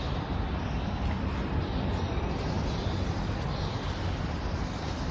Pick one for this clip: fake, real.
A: real